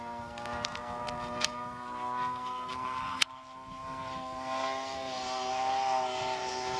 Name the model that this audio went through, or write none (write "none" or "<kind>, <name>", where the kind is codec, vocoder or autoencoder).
codec, SNAC